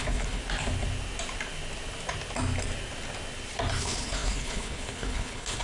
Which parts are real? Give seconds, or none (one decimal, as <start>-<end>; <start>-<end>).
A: 0.4-3.8